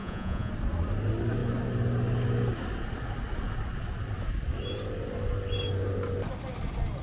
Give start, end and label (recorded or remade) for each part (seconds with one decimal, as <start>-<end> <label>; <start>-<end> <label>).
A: 0.0-0.5 remade; 0.5-7.0 recorded